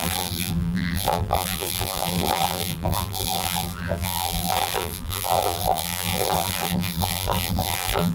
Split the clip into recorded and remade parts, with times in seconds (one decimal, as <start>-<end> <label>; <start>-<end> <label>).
0.0-8.1 remade